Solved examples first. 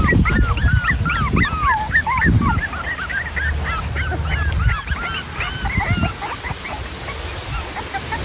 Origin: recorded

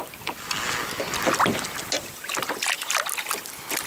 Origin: recorded